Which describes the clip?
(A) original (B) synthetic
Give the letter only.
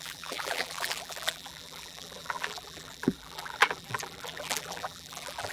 B